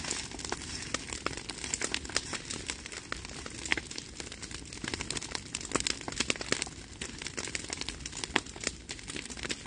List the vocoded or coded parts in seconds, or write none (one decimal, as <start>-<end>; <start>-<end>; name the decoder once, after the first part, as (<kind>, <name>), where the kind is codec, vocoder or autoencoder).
none